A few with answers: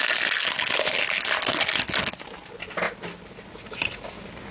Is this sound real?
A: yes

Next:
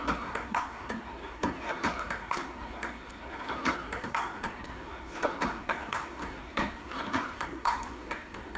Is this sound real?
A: no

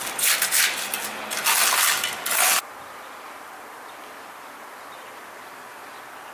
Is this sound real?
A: yes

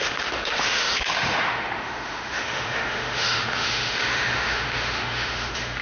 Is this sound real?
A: no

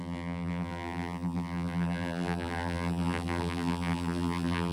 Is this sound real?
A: no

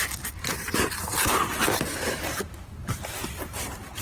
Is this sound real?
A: yes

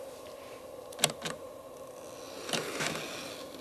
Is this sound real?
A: yes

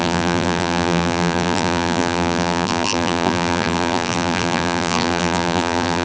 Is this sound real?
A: no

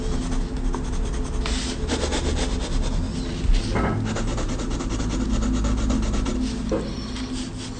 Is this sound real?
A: yes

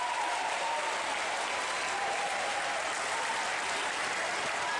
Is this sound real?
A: yes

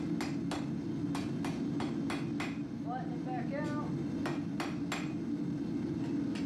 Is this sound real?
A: yes